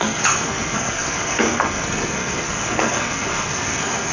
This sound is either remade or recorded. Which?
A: remade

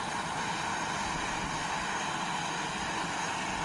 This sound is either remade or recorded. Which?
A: recorded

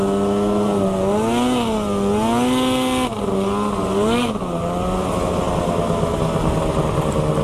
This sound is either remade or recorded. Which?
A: recorded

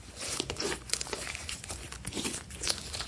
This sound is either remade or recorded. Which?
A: remade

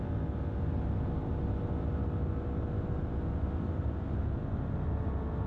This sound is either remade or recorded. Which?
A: recorded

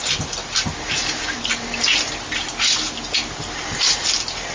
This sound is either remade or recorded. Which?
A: recorded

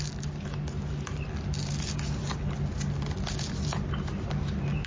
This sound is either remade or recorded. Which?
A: recorded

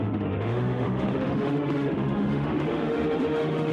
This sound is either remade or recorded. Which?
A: remade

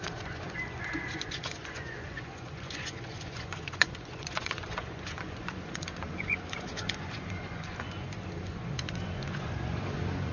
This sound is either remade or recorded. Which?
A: remade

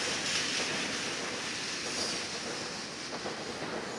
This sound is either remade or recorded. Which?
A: recorded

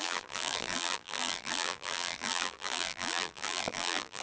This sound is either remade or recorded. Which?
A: remade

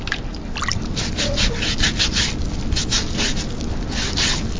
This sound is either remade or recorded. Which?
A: recorded